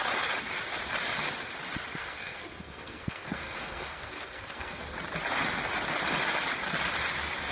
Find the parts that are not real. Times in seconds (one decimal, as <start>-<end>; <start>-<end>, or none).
2.0-4.8